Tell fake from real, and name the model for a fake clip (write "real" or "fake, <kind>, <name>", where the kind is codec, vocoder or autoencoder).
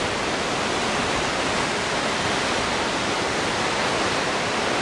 real